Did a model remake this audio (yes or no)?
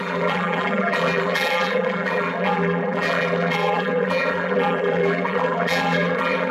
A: yes